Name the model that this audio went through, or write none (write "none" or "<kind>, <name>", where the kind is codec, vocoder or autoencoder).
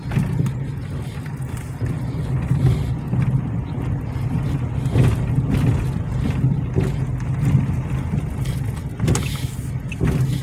none